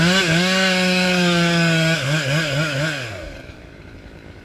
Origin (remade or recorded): remade